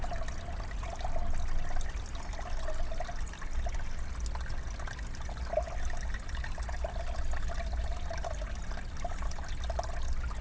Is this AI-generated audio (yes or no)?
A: no